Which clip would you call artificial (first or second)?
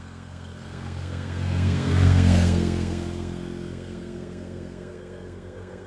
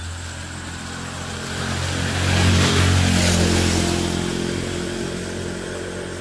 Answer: first